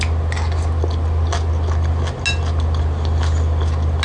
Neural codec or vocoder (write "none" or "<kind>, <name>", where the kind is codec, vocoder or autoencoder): none